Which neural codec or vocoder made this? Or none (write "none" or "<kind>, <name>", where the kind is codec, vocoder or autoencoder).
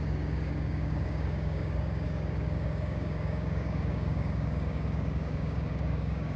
codec, DAC